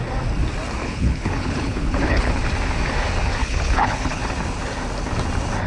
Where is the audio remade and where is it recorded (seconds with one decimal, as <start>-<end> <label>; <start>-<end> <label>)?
0.0-0.8 recorded; 0.8-2.4 remade; 2.4-3.4 recorded; 3.4-4.2 remade; 4.2-5.7 recorded